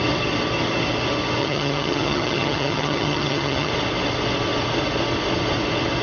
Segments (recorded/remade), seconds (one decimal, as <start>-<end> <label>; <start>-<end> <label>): 0.0-1.4 recorded; 1.4-3.7 remade; 3.7-6.0 recorded

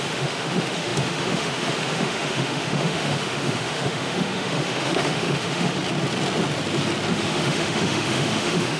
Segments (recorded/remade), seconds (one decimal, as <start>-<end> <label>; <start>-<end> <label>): 0.0-5.8 remade; 5.8-7.1 recorded; 7.1-8.8 remade

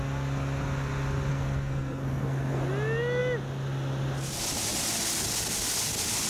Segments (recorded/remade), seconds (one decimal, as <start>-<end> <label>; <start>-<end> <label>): 0.0-1.3 recorded; 1.3-2.6 remade; 2.6-6.3 recorded

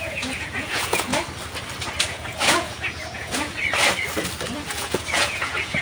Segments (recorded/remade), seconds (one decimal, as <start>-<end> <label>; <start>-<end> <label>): 0.0-1.1 remade; 1.1-2.1 recorded; 2.1-3.6 remade; 3.6-4.7 recorded; 4.7-5.8 remade

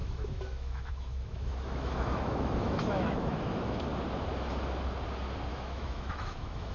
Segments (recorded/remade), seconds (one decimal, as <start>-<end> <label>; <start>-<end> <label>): 0.0-3.9 remade; 3.9-5.5 recorded; 5.5-6.7 remade

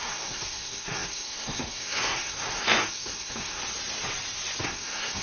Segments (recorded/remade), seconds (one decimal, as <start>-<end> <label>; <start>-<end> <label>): 0.0-3.6 remade; 3.6-4.6 recorded; 4.6-5.2 remade

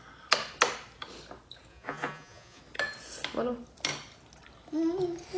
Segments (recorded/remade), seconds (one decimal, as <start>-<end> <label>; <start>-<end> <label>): 0.0-1.7 recorded; 1.7-2.6 remade; 2.6-5.4 recorded

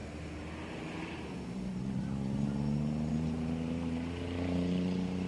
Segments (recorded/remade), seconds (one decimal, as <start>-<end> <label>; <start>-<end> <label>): 0.0-0.7 recorded; 0.7-1.7 remade; 1.7-3.1 recorded; 3.1-5.3 remade